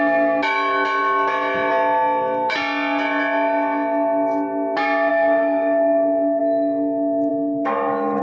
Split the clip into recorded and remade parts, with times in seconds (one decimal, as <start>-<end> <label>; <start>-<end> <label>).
0.0-5.1 recorded; 5.1-6.4 remade; 6.4-7.3 recorded; 7.3-8.2 remade